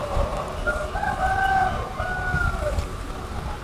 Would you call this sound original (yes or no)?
yes